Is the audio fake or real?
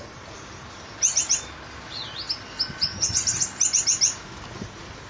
real